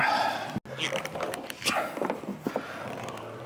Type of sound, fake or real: real